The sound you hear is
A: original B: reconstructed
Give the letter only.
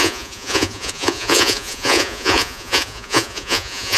B